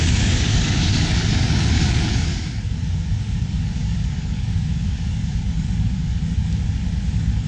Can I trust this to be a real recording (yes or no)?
no